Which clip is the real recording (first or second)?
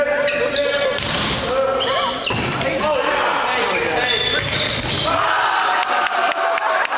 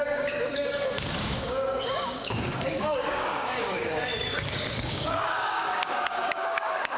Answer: first